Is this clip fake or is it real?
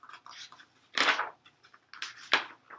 real